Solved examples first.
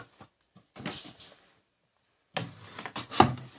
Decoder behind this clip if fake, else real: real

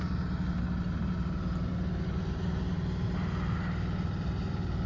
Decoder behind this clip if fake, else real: real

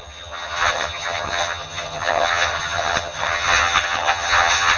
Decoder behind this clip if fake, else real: fake, vocoder, HiFi-GAN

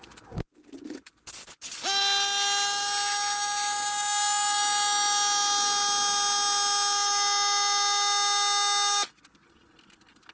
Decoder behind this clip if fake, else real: real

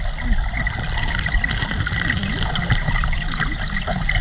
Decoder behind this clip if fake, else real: real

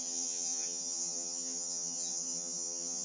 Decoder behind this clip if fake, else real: fake, vocoder, HiFi-GAN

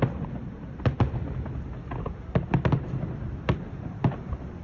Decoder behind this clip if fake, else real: real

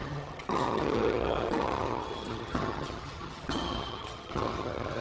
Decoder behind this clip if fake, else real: fake, vocoder, HiFi-GAN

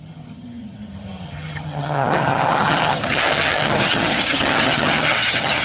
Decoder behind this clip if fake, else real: fake, vocoder, HiFi-GAN